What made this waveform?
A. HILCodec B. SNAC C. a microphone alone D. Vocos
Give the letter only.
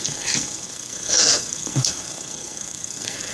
B